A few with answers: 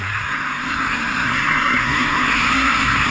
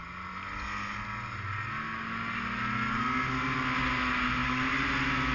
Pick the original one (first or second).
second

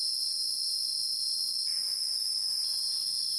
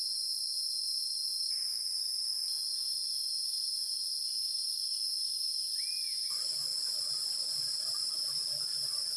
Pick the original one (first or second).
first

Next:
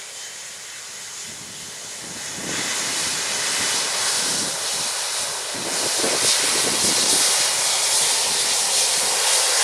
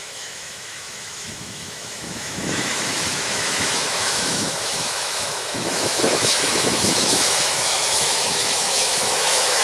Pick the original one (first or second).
first